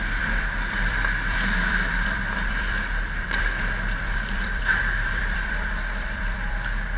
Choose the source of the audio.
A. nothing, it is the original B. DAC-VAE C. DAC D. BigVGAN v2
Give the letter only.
D